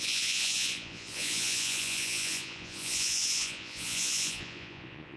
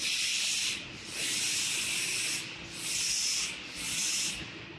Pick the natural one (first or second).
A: second